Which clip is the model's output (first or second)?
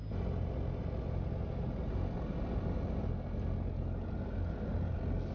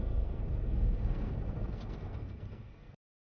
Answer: second